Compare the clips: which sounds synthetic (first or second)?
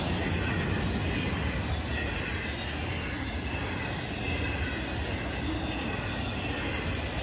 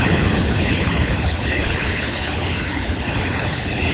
second